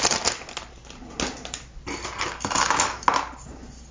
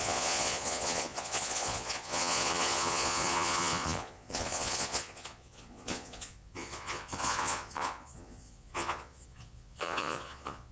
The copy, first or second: second